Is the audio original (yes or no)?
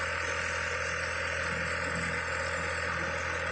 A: yes